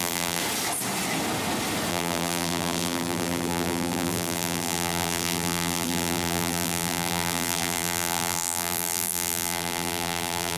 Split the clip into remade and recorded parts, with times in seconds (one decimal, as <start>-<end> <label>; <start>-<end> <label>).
0.0-0.4 remade; 0.4-1.9 recorded; 1.9-10.6 remade